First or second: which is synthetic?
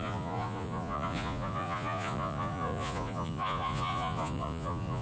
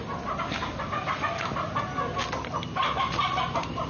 first